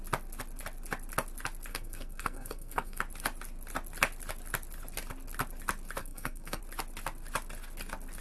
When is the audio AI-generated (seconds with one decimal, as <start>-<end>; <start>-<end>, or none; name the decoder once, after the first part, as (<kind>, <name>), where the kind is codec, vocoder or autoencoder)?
1.7-3.0 (codec, SNAC); 6.0-6.6